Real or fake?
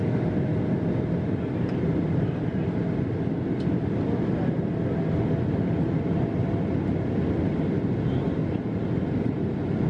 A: real